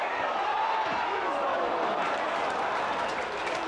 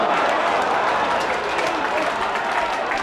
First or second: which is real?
second